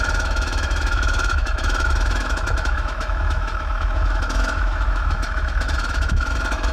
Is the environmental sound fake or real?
fake